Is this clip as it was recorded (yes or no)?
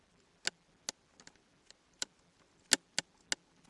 yes